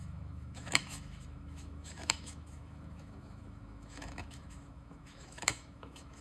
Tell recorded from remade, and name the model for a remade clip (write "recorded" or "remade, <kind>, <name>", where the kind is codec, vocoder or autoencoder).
remade, autoencoder, DAC-VAE